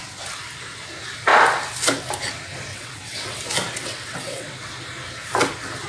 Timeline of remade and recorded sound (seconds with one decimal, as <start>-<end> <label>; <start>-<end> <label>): 0.0-2.7 recorded; 2.7-3.4 remade; 3.4-3.8 recorded; 3.8-4.7 remade; 4.7-5.9 recorded

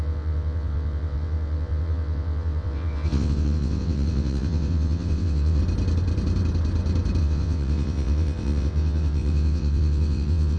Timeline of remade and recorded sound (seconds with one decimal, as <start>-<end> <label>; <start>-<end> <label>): 0.0-5.6 remade; 5.6-7.2 recorded; 7.2-10.6 remade